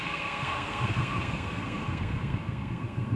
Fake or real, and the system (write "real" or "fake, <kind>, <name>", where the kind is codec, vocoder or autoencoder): fake, codec, SNAC